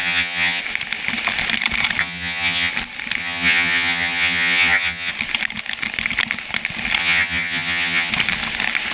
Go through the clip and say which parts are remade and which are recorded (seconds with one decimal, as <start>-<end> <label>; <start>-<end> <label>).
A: 0.0-0.6 remade; 0.6-2.0 recorded; 2.0-2.7 remade; 2.7-3.2 recorded; 3.2-5.1 remade; 5.1-7.0 recorded; 7.0-8.1 remade; 8.1-8.9 recorded